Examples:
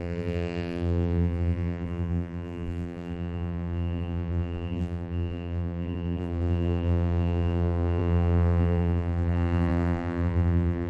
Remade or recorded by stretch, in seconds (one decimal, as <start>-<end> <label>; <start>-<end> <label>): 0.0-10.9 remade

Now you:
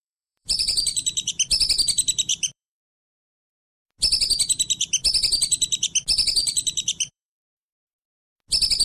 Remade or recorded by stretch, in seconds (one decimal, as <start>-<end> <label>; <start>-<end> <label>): 0.0-1.3 remade; 1.3-2.3 recorded; 2.3-3.5 remade; 3.5-6.4 recorded; 6.4-7.5 remade; 7.5-8.8 recorded

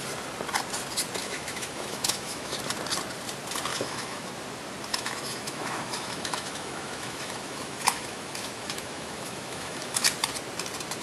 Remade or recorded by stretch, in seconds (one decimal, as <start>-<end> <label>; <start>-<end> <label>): 0.0-1.2 recorded; 1.2-2.6 remade; 2.6-3.7 recorded; 3.7-4.3 remade; 4.3-4.9 recorded; 4.9-10.0 remade; 10.0-11.0 recorded

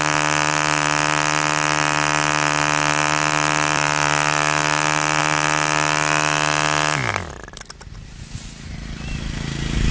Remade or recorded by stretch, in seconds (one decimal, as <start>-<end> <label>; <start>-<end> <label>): 0.0-9.9 recorded

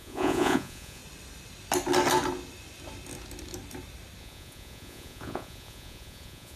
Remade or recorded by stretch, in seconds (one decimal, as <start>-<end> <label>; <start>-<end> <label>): 0.0-1.0 remade; 1.0-4.2 recorded; 4.2-6.6 remade

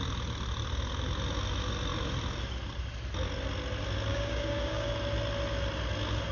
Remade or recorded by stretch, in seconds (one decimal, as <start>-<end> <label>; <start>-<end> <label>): 0.0-4.1 recorded; 4.1-4.9 remade; 4.9-6.3 recorded

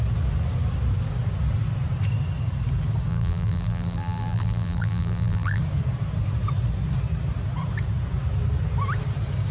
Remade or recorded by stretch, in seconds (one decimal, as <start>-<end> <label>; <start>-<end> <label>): 0.0-3.1 recorded; 3.1-5.6 remade; 5.6-9.5 recorded

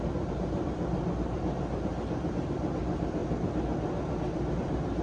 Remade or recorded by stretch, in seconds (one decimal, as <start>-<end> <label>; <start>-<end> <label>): 0.0-5.0 recorded